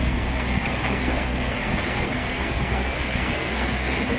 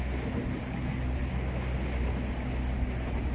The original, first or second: second